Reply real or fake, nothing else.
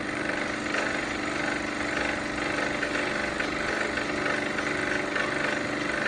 real